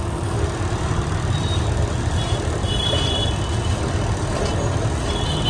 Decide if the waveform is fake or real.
real